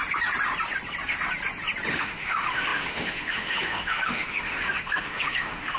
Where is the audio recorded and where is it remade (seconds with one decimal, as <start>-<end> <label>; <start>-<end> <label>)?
0.0-1.9 recorded; 1.9-5.8 remade